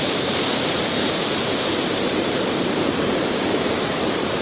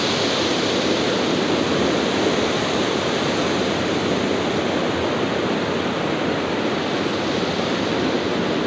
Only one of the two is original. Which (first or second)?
second